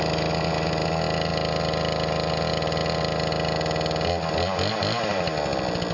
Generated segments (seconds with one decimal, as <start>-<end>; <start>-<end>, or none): none